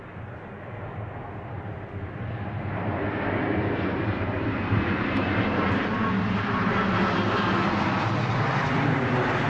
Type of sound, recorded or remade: recorded